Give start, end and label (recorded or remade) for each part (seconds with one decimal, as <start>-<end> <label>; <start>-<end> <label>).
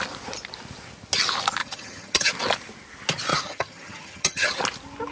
0.0-1.6 recorded; 1.6-2.3 remade; 2.3-3.3 recorded; 3.3-4.6 remade; 4.6-5.1 recorded